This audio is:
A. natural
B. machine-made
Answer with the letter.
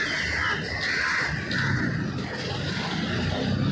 A